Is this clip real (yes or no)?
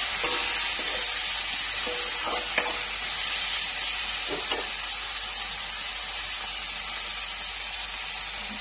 yes